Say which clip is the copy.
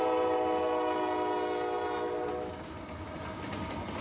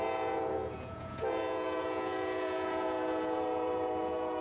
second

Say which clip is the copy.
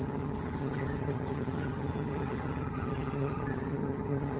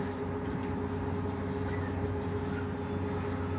first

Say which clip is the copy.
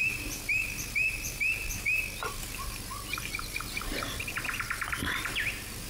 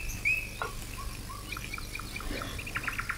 first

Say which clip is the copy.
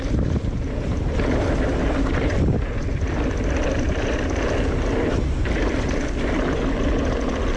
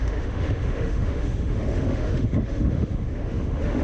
second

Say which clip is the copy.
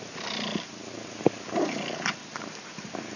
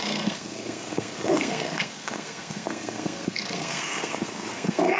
second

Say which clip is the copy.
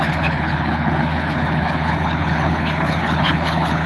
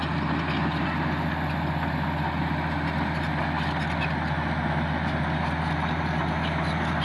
first